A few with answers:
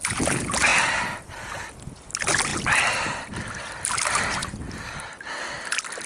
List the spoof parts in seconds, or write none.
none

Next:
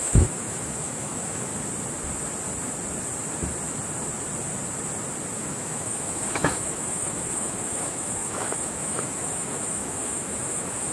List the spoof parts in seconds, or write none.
0.0-1.5 (autoencoder, DAC-VAE); 5.4-10.9

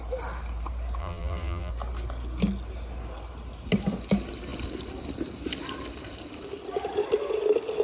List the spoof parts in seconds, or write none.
1.0-1.7 (vocoder, BigVGAN v2)

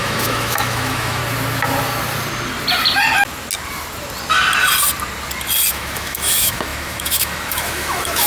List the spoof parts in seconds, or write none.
0.0-1.2 (autoencoder, DAC-VAE); 5.7-8.3

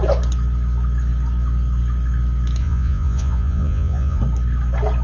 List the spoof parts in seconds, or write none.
2.6-4.2 (vocoder, Vocos)